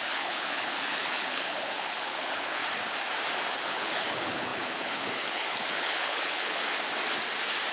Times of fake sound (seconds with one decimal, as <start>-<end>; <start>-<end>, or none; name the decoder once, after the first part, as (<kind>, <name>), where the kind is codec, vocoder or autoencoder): 0.0-2.6 (codec, HILCodec); 3.5-6.6